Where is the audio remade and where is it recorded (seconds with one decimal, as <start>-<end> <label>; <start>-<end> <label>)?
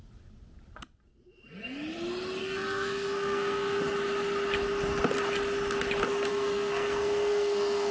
0.0-2.4 recorded; 2.4-3.8 remade; 3.8-6.3 recorded; 6.3-7.9 remade